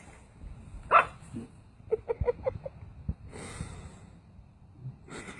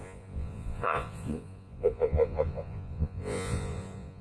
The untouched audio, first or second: first